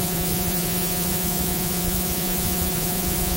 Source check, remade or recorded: remade